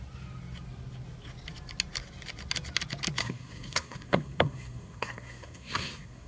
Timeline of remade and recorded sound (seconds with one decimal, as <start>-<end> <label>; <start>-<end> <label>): 0.0-3.2 recorded; 3.2-6.3 remade